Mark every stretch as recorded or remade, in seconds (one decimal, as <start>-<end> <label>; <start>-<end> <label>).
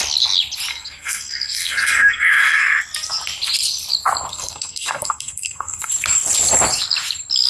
0.0-0.7 recorded; 0.7-2.8 remade; 2.8-4.3 recorded; 4.3-5.9 remade; 5.9-7.5 recorded